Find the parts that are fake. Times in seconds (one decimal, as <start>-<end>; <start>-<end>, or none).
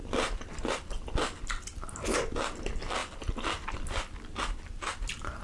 3.0-4.7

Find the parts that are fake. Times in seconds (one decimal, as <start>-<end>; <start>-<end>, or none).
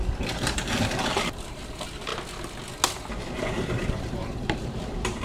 0.0-2.1; 3.4-5.2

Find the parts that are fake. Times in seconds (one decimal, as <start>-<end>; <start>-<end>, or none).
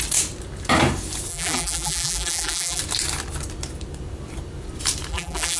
1.3-2.8; 5.1-5.6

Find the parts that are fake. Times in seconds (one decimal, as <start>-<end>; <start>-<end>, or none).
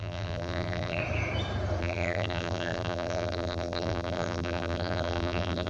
0.0-1.0; 1.8-5.7